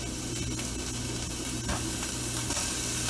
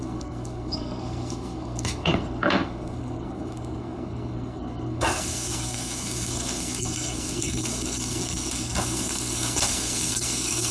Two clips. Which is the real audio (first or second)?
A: first